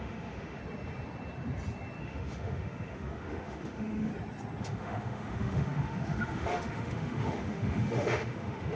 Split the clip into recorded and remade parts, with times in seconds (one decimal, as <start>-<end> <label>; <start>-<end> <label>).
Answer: 0.0-0.6 remade; 0.6-2.0 recorded; 2.0-4.1 remade; 4.1-4.6 recorded; 4.6-8.7 remade